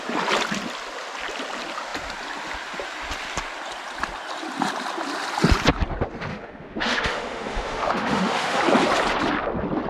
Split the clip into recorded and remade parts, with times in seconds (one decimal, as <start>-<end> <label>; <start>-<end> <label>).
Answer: 0.0-6.3 recorded; 6.3-8.6 remade; 8.6-9.9 recorded